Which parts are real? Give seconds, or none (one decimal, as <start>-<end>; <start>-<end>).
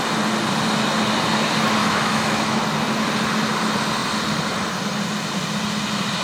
0.0-1.8; 2.6-6.2